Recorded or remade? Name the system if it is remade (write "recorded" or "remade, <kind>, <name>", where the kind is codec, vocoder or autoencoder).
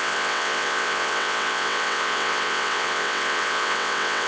remade, vocoder, WaveNeXt